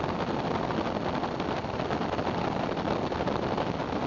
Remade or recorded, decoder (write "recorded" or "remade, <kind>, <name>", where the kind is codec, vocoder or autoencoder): recorded